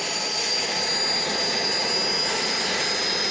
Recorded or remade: recorded